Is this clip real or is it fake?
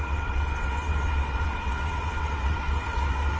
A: fake